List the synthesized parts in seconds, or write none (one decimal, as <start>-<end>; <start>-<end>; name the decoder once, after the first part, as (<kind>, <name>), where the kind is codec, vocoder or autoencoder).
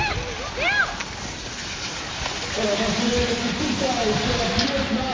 none